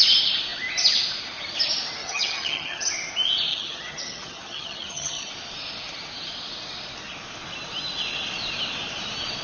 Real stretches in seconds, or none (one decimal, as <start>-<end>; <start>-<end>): 0.0-2.0; 2.9-3.5; 5.3-9.4